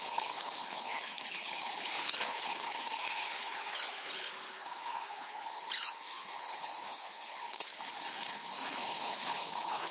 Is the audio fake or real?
fake